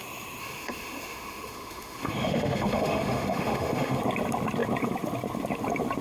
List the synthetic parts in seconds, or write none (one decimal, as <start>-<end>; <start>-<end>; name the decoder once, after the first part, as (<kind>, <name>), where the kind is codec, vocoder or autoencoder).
0.4-4.0 (autoencoder, DAC-VAE)